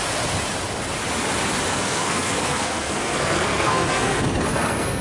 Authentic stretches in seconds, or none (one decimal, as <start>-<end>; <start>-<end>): 0.0-1.7